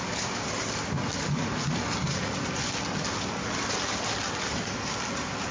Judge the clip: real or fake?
real